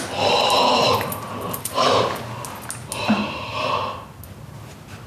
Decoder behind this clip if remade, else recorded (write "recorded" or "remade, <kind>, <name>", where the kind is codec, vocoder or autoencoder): recorded